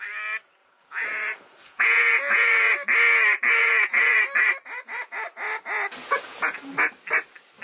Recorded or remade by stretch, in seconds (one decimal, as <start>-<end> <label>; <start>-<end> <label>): 0.0-0.6 recorded; 0.6-2.7 remade; 2.7-3.6 recorded; 3.6-4.2 remade; 4.2-6.0 recorded; 6.0-6.9 remade; 6.9-7.6 recorded